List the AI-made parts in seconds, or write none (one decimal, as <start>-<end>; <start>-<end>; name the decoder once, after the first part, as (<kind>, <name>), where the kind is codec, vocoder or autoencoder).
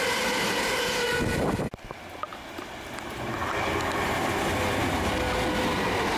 none